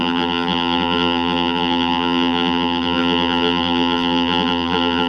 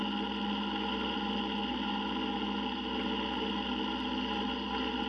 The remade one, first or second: first